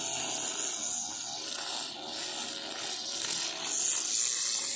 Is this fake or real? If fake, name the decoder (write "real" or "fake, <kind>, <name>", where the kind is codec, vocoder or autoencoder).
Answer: real